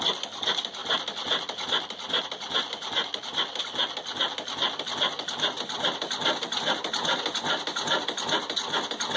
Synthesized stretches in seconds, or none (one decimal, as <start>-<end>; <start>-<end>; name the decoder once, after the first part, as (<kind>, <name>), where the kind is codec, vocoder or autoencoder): none